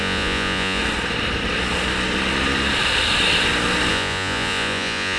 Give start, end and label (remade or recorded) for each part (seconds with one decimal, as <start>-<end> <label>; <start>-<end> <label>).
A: 0.0-0.8 remade; 0.8-3.9 recorded; 3.9-5.2 remade